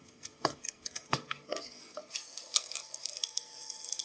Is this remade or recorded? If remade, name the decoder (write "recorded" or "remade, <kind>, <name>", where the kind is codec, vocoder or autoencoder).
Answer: remade, codec, SNAC